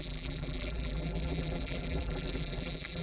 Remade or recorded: remade